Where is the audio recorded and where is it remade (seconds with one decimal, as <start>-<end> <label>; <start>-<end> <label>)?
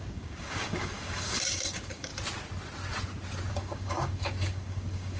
0.0-2.1 remade; 2.1-3.5 recorded; 3.5-5.2 remade